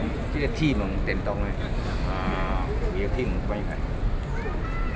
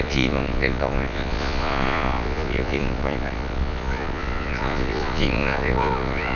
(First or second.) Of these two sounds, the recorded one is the first